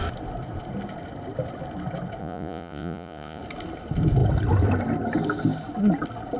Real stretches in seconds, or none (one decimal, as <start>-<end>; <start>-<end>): 0.0-2.2; 3.4-6.4